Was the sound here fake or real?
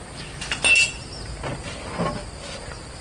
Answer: real